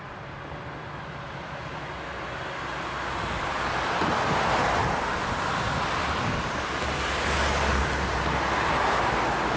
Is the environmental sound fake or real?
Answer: real